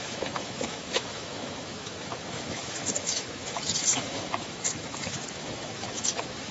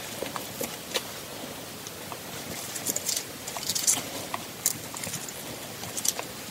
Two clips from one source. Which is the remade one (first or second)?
first